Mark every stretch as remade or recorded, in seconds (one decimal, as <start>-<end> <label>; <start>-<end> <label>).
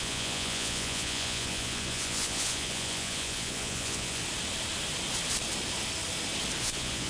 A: 0.0-4.2 remade; 4.2-6.6 recorded; 6.6-7.1 remade